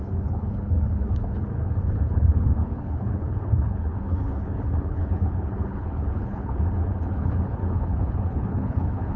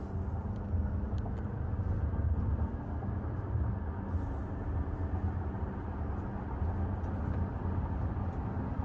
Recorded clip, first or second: second